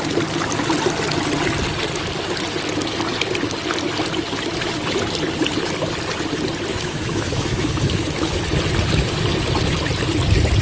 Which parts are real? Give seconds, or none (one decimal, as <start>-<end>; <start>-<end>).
0.0-6.7; 8.4-10.6